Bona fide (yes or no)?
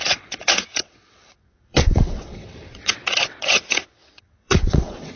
no